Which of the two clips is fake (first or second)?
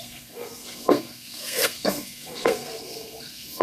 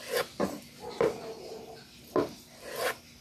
first